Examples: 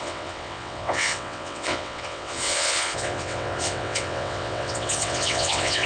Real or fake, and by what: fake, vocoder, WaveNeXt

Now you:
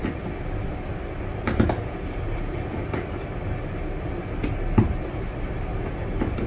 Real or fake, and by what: real